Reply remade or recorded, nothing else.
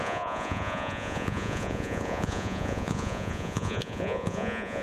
remade